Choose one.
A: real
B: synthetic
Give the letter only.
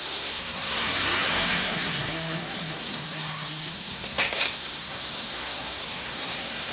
B